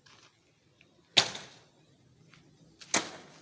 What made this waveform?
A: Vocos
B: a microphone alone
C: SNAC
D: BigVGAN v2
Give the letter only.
B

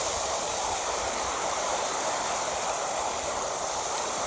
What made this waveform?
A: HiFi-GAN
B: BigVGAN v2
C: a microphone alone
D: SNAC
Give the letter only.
B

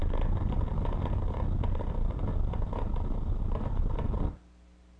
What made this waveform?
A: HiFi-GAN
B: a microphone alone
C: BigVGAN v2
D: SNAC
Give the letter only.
B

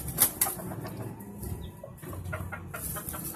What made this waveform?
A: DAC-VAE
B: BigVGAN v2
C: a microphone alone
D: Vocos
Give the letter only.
C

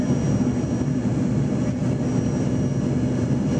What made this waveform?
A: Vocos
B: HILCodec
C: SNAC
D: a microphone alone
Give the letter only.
D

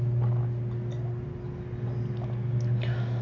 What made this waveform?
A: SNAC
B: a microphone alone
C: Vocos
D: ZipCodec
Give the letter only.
B